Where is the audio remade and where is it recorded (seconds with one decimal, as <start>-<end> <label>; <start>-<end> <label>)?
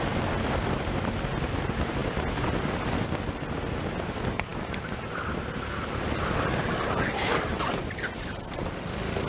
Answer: 0.0-2.0 recorded; 2.0-2.6 remade; 2.6-9.3 recorded